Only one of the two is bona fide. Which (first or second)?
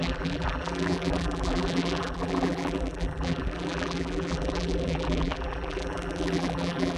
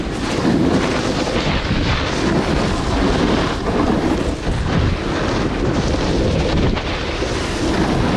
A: second